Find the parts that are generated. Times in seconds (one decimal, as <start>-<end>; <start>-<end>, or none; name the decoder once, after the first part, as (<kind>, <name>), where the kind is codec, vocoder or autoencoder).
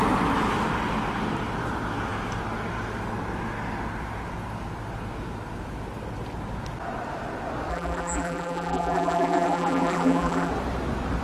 7.7-10.5 (vocoder, BigVGAN v2)